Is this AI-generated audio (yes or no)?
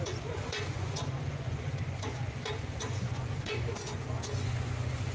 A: yes